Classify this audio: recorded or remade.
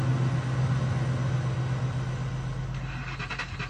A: recorded